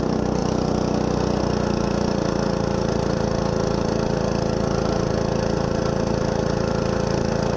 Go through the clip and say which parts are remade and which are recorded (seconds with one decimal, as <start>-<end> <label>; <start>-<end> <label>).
0.0-7.6 recorded